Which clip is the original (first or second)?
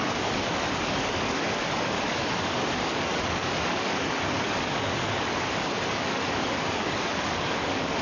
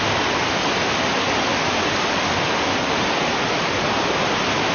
second